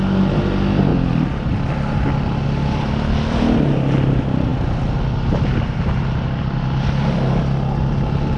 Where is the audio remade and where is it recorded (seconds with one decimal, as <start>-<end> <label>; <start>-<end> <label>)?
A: 0.0-8.4 recorded